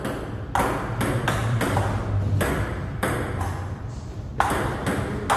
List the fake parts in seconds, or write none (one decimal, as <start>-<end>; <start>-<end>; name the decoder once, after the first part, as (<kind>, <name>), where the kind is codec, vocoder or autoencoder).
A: 1.4-4.0 (vocoder, BigVGAN v2)

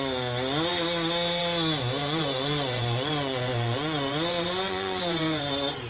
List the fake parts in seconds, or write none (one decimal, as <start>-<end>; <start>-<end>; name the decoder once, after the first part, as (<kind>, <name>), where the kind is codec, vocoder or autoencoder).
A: 2.0-5.5 (vocoder, Vocos)